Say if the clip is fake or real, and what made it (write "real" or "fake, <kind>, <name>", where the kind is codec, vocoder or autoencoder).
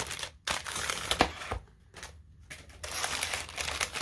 real